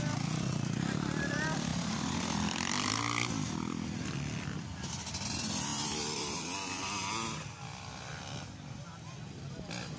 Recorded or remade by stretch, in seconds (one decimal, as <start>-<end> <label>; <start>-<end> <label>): 0.0-10.0 recorded